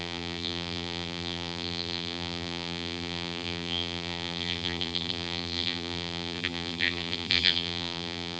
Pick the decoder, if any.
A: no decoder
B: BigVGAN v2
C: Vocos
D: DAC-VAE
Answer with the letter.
B